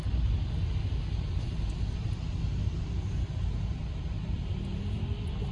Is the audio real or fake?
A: real